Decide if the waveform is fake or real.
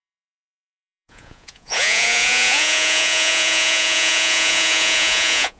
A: fake